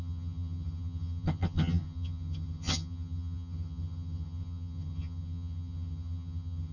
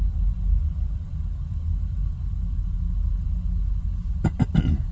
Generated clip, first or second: first